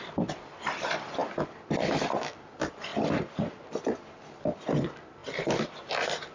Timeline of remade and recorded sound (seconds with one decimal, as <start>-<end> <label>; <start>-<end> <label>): 0.0-6.3 recorded